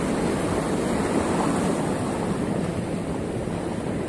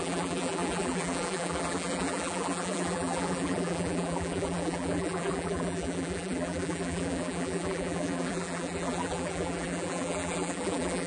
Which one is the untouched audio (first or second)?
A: first